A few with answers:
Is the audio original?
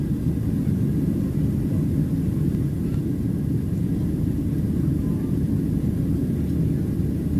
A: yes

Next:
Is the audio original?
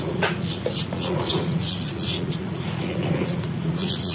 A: no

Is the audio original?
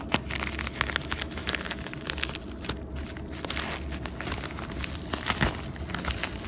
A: yes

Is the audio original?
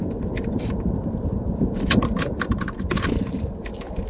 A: no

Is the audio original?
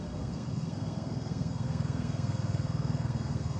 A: no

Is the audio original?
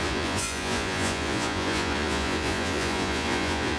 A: no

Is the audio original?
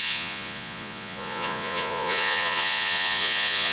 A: no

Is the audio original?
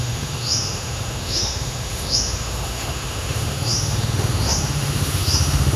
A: no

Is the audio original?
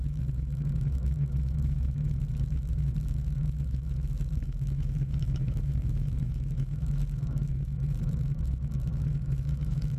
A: no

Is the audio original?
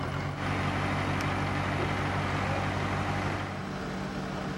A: yes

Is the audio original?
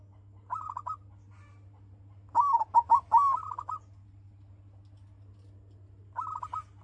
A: yes